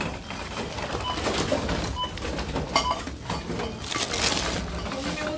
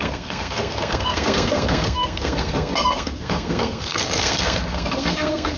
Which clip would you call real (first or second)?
first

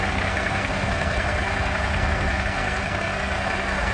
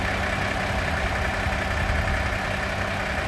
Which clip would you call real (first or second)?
second